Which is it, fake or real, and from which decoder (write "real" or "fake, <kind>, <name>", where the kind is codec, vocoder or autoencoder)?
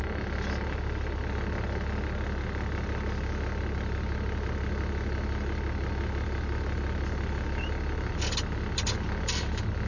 real